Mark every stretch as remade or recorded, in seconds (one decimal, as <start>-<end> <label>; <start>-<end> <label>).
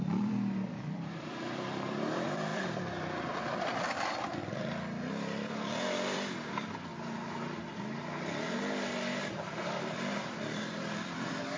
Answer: 0.0-6.9 remade; 6.9-9.3 recorded; 9.3-11.6 remade